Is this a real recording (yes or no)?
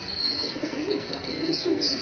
no